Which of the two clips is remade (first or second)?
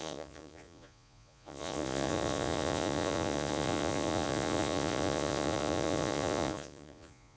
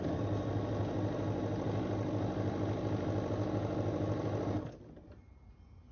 first